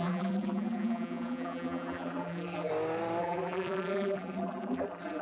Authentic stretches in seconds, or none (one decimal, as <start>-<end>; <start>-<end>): 2.7-3.2